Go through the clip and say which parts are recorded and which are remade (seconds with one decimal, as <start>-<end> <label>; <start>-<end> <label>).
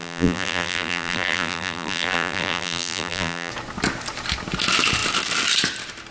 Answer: 0.0-3.5 remade; 3.5-6.1 recorded